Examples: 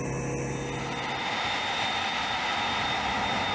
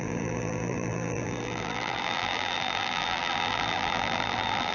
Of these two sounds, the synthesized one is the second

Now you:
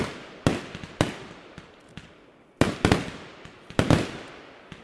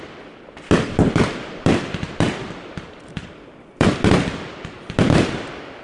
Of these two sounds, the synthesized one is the second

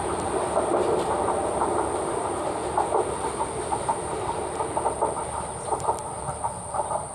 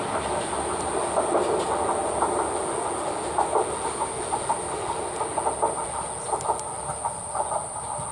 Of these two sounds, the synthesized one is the first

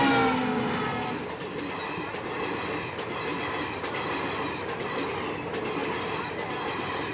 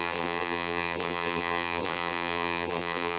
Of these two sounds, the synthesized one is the second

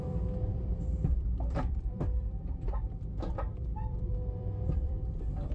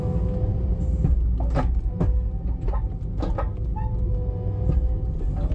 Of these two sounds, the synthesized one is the first